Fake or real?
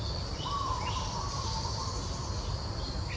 fake